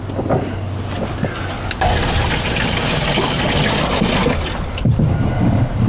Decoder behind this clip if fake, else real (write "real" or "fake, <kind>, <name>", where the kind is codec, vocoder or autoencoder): real